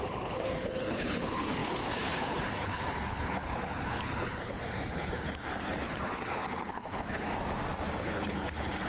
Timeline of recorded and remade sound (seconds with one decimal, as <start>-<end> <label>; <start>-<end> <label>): 0.0-7.3 remade; 7.3-8.0 recorded; 8.0-8.9 remade